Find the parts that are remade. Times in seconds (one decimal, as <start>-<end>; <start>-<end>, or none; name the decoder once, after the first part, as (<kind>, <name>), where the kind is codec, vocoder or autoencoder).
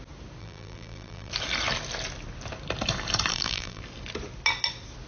0.4-1.3 (vocoder, BigVGAN v2); 3.3-3.8